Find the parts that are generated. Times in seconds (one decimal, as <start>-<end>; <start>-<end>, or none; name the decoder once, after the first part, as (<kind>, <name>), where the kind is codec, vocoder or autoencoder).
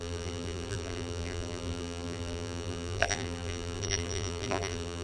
0.0-5.0 (vocoder, BigVGAN v2)